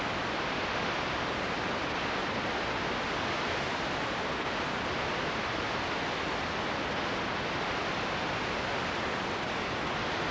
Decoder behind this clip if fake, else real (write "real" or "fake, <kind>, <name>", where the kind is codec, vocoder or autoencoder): real